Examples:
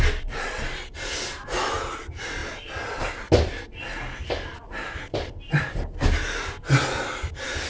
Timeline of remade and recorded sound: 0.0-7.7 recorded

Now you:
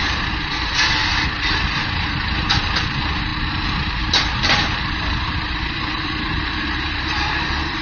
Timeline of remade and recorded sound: 0.0-7.8 remade

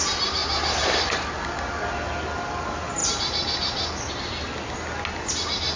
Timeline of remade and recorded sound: 0.0-0.4 recorded; 0.4-1.3 remade; 1.3-5.8 recorded